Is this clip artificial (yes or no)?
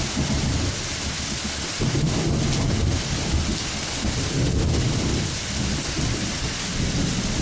no